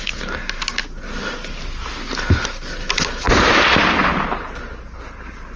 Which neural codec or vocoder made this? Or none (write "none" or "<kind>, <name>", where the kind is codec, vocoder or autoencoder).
none